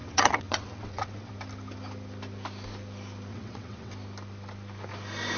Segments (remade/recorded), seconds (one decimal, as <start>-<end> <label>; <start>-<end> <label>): 0.0-1.3 remade; 1.3-3.3 recorded; 3.3-3.9 remade; 3.9-5.4 recorded